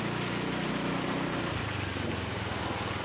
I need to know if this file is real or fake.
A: real